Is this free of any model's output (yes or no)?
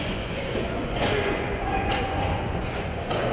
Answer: no